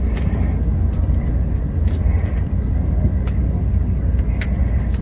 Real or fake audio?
real